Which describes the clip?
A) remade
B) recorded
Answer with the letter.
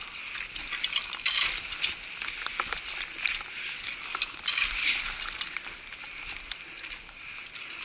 B